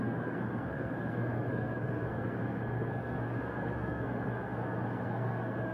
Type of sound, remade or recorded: remade